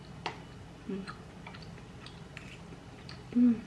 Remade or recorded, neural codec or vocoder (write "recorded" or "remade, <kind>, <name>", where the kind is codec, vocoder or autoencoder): recorded